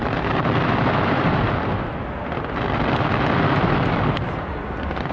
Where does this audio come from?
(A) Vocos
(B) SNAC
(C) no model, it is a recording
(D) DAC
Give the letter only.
C